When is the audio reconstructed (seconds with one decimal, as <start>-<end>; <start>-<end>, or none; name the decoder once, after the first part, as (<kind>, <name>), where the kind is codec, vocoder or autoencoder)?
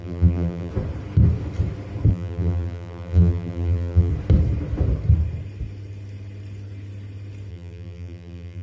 0.0-0.7 (vocoder, BigVGAN v2); 2.1-4.1; 7.5-8.6